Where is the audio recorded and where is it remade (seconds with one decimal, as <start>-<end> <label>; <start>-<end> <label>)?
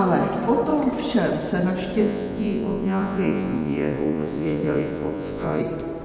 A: 0.0-2.0 recorded; 2.0-5.6 remade; 5.6-6.0 recorded